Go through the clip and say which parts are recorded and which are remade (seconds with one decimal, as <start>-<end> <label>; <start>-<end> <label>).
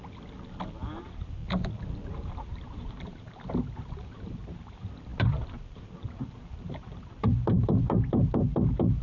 0.0-1.0 recorded; 1.0-1.4 remade; 1.4-2.1 recorded; 2.1-9.0 remade